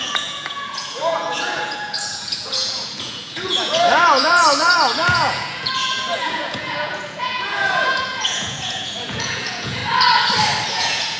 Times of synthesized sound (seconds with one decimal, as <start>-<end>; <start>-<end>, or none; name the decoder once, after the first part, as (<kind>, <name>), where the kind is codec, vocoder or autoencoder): 0.0-9.8 (vocoder, Vocos); 10.7-11.2